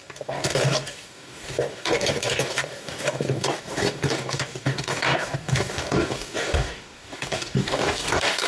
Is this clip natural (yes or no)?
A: no